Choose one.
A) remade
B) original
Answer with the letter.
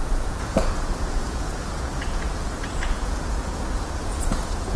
A